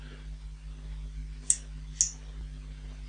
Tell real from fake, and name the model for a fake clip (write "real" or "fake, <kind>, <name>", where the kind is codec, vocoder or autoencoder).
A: real